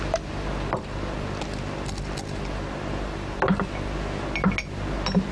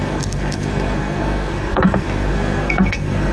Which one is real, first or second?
first